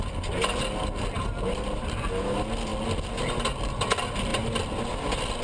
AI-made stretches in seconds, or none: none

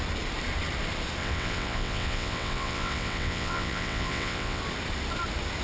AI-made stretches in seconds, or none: 1.2-4.6 (vocoder, WaveNeXt)

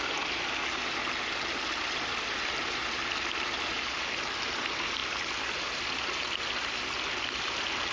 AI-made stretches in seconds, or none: none

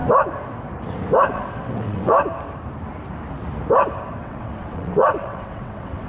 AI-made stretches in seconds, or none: 1.3-2.1 (vocoder, WaveNeXt); 4.2-6.1

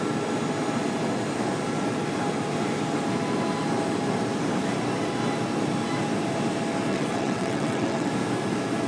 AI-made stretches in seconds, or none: 6.9-8.1 (vocoder, WaveNeXt)

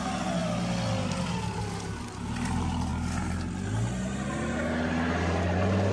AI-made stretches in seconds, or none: none

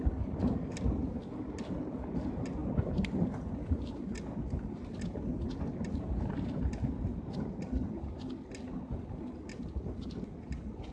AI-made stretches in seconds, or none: none

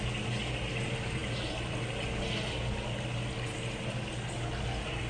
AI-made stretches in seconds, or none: none